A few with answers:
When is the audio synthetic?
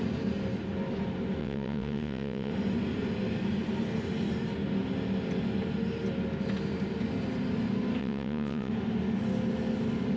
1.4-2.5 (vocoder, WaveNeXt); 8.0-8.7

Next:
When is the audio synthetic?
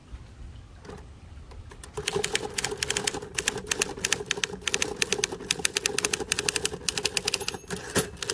none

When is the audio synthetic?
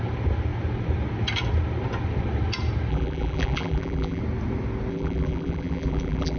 2.9-4.2 (vocoder, BigVGAN v2); 4.9-6.4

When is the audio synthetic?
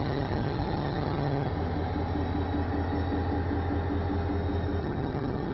0.0-1.5 (vocoder, HiFi-GAN); 4.8-5.5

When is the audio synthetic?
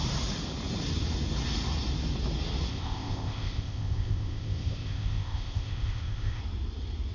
2.7-6.4 (codec, ZipCodec)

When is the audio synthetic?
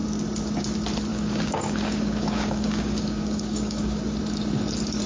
1.1-4.0 (codec, DAC)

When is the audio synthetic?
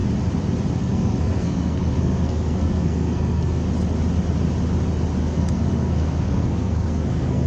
0.8-3.6 (codec, SNAC); 5.2-7.5